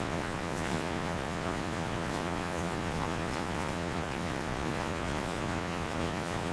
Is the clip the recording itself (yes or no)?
no